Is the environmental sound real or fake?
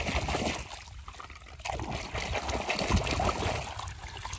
real